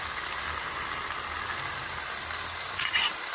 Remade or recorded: recorded